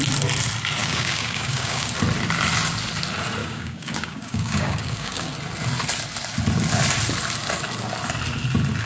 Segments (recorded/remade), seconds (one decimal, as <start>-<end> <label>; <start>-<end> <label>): 0.0-0.8 recorded; 0.8-1.9 remade; 1.9-3.4 recorded; 3.4-5.3 remade; 5.3-8.9 recorded